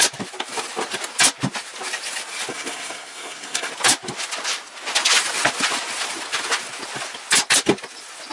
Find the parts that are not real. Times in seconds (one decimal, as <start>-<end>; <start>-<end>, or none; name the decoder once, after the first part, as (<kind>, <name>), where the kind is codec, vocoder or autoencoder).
2.5-3.7 (codec, SNAC)